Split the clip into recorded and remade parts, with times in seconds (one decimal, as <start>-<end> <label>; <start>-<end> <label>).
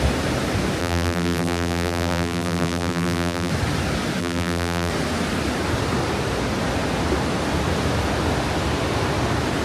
0.0-0.8 recorded; 0.8-3.5 remade; 3.5-4.2 recorded; 4.2-4.9 remade; 4.9-9.6 recorded